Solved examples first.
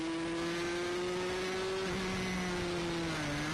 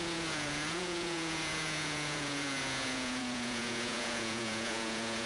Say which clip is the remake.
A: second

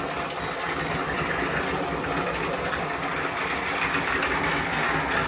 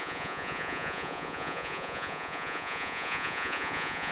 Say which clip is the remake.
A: second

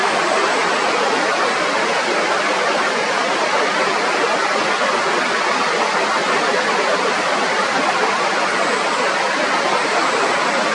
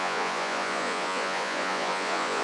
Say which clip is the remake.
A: second